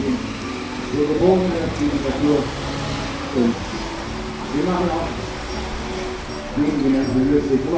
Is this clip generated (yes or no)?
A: no